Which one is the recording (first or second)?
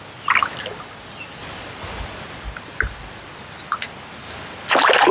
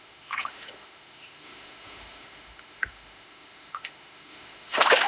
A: first